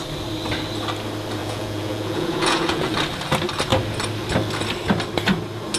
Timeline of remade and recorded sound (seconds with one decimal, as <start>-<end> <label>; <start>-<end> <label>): 0.0-1.4 recorded; 1.4-2.9 remade; 2.9-5.8 recorded